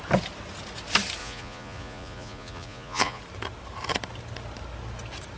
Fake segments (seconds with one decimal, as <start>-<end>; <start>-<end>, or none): 1.2-3.2